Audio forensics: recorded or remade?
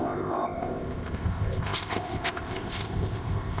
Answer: remade